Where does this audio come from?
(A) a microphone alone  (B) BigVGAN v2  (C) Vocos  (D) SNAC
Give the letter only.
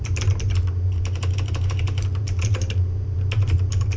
B